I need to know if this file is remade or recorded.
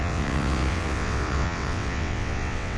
remade